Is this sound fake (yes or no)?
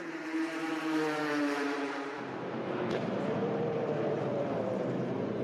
yes